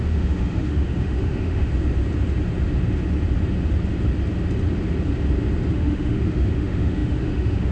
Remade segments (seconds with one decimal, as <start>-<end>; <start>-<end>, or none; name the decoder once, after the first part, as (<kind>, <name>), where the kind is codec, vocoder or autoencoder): 0.0-1.7 (autoencoder, DAC-VAE); 5.7-7.7